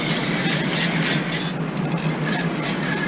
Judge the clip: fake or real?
real